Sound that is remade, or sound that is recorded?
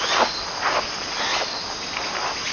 recorded